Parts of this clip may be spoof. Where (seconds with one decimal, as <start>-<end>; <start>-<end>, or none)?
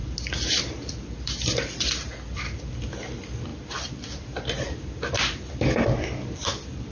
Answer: 0.7-6.9